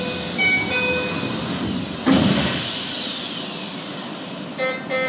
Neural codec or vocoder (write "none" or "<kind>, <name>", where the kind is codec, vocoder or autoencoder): none